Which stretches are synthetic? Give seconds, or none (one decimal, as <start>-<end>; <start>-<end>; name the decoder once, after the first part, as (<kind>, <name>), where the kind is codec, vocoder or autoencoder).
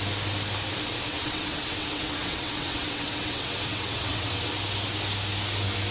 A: 1.1-4.5 (vocoder, WaveNeXt)